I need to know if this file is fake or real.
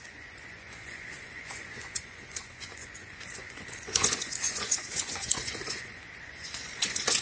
fake